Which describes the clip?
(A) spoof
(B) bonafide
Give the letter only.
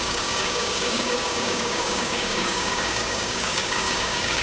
A